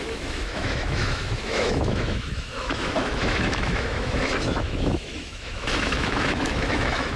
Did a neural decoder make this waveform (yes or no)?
yes